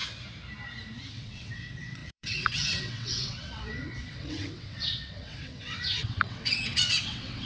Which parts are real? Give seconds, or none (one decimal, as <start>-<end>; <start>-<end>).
0.0-1.1